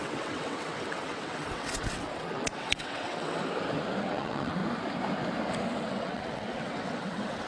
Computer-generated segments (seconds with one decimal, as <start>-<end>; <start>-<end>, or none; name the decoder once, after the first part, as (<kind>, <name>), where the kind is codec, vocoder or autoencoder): 0.0-3.4 (vocoder, WaveNeXt); 4.0-4.6; 5.8-7.5

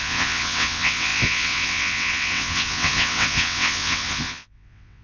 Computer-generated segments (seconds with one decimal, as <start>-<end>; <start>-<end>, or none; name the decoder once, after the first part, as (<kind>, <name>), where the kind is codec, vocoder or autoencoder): 0.0-5.0 (vocoder, WaveNeXt)

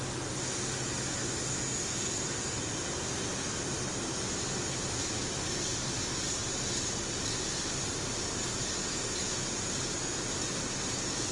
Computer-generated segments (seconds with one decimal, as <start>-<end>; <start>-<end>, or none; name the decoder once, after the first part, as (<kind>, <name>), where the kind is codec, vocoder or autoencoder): 9.2-9.7 (vocoder, Vocos)